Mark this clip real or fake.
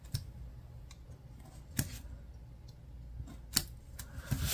real